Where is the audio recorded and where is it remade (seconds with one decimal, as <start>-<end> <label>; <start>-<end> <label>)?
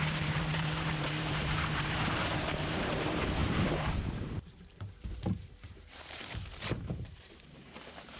0.0-8.2 remade